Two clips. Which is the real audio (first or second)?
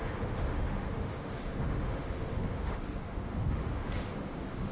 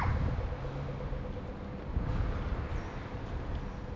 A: second